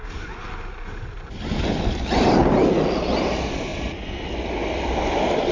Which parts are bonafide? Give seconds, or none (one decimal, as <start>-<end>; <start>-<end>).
0.0-5.5